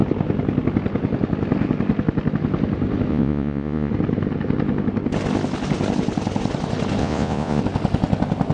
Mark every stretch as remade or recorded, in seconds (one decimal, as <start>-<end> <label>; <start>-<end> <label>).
0.0-3.1 recorded; 3.1-3.9 remade; 3.9-7.0 recorded; 7.0-7.6 remade; 7.6-8.5 recorded